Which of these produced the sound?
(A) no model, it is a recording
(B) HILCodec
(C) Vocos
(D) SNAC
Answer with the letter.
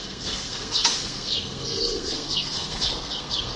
D